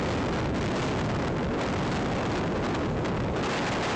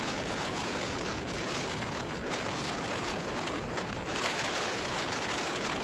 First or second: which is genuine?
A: first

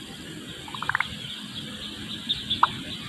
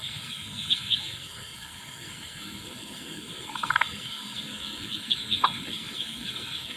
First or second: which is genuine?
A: first